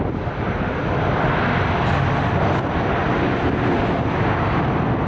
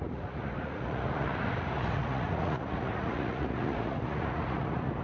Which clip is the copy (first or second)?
second